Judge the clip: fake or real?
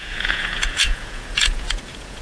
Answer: fake